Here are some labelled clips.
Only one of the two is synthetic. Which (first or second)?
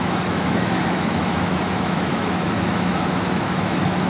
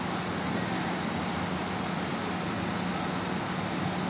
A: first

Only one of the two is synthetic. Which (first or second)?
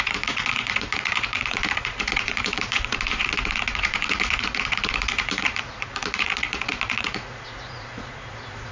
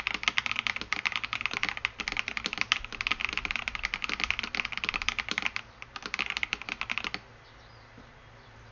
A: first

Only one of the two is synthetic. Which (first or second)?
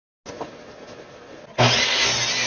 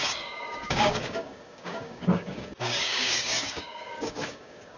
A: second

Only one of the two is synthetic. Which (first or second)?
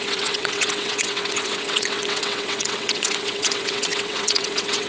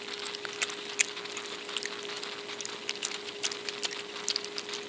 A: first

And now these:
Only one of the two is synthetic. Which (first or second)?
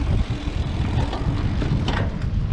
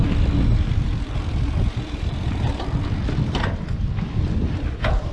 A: second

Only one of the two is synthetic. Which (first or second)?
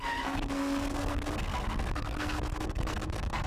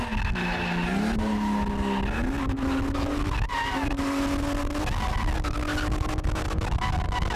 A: first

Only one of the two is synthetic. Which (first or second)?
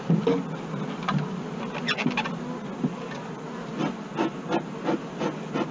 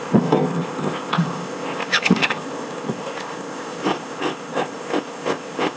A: second